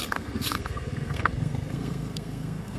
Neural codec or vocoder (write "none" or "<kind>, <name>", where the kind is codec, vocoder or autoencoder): codec, SNAC